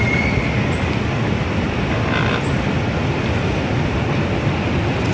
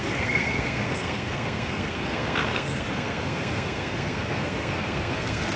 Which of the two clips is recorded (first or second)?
first